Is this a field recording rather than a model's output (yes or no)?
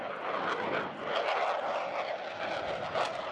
yes